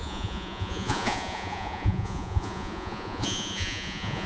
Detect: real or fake fake